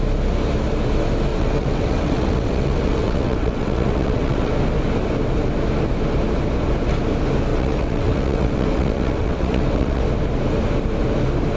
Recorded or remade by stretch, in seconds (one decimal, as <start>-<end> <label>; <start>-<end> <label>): 0.0-1.3 recorded; 1.3-4.5 remade; 4.5-7.5 recorded; 7.5-10.0 remade; 10.0-11.6 recorded

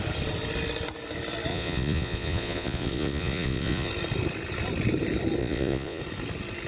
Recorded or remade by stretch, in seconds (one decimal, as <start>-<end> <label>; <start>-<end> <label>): 0.0-1.5 recorded; 1.5-3.9 remade; 3.9-5.4 recorded; 5.4-6.0 remade; 6.0-6.7 recorded

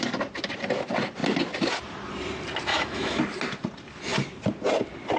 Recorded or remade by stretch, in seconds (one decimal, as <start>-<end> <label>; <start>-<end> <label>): 0.0-2.7 recorded; 2.7-3.2 remade; 3.2-5.2 recorded